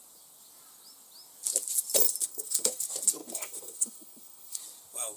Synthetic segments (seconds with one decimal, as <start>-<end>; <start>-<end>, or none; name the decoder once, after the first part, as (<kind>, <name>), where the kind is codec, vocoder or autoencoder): 2.2-2.8 (codec, SNAC); 3.2-4.6